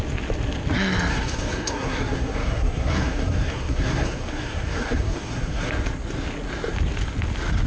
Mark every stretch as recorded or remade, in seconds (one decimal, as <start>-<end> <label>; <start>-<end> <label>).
0.0-1.1 recorded; 1.1-5.7 remade; 5.7-7.7 recorded